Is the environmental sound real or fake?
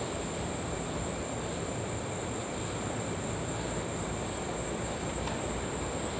fake